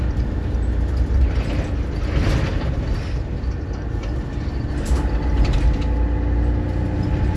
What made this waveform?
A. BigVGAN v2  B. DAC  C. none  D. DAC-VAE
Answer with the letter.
C